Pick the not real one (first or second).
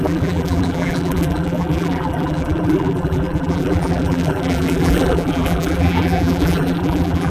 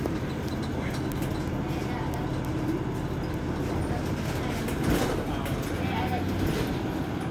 first